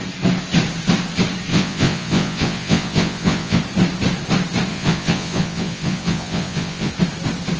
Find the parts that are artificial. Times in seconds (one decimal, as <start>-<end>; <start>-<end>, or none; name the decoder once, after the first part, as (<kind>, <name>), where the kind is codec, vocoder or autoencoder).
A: 1.5-3.6 (vocoder, Vocos); 4.7-6.9